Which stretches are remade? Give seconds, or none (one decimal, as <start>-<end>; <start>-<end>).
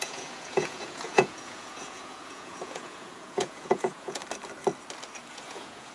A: 0.0-4.2; 5.3-5.9